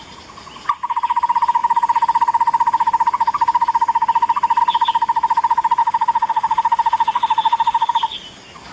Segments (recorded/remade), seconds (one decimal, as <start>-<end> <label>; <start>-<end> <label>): 0.0-5.8 recorded; 5.8-7.9 remade; 7.9-8.7 recorded